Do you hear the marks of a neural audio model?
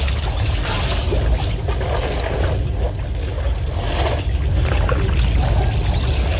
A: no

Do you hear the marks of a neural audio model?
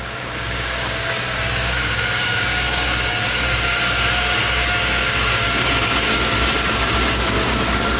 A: yes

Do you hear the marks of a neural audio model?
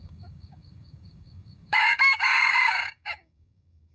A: yes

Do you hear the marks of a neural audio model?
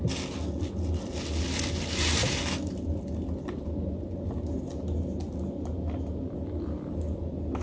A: no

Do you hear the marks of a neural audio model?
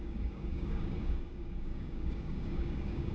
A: yes